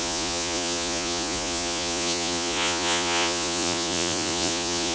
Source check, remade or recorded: remade